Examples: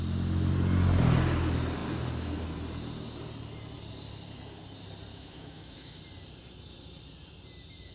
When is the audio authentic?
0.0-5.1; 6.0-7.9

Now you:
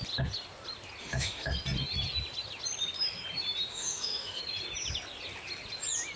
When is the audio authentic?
0.0-1.0; 1.5-3.7; 4.4-6.2

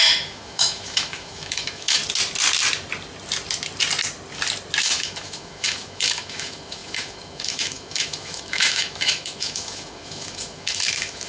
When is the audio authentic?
2.0-4.8

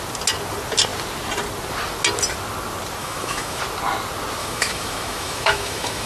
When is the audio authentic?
0.0-3.0; 3.6-4.4

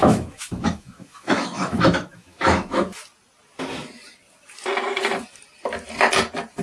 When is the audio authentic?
2.9-6.6

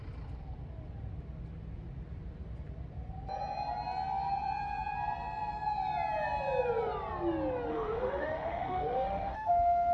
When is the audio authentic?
0.0-7.7; 9.5-9.9

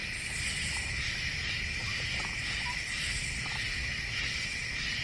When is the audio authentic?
0.0-5.0

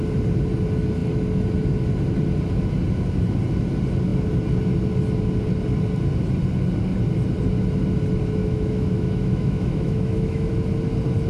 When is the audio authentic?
0.0-8.4; 10.5-11.3